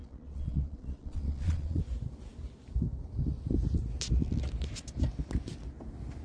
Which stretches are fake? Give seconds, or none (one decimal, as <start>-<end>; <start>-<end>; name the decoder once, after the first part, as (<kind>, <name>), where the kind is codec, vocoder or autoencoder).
0.0-1.8 (vocoder, Vocos)